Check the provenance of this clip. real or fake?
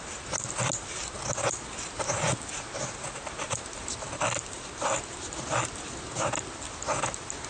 real